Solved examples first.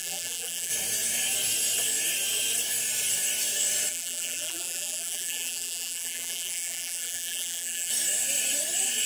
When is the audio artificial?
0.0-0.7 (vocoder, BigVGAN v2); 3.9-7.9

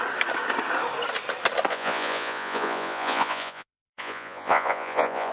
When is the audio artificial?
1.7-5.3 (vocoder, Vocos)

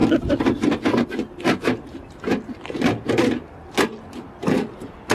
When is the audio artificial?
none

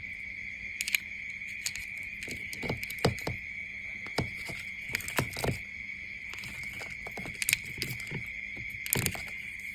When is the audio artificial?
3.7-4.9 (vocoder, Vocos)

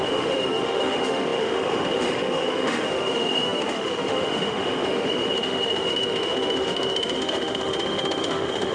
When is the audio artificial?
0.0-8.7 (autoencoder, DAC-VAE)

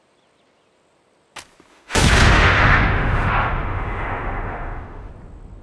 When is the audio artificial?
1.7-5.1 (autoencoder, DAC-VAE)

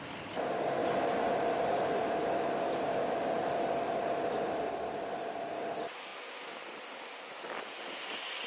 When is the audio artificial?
none